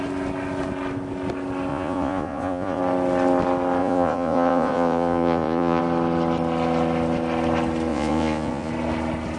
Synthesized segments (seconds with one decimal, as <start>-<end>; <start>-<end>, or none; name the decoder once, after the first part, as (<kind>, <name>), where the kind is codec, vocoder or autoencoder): 1.7-2.8 (vocoder, Vocos); 3.8-5.8; 7.9-8.7